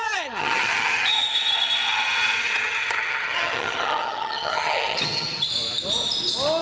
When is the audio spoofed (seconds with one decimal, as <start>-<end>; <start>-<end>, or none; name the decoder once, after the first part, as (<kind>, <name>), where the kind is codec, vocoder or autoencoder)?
0.0-5.5 (vocoder, HiFi-GAN)